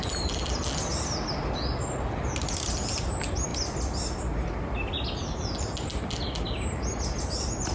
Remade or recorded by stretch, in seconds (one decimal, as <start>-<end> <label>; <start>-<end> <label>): 0.0-7.7 recorded